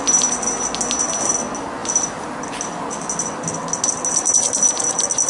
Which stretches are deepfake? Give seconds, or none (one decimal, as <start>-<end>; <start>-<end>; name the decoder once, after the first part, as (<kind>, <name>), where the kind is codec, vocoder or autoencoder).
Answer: none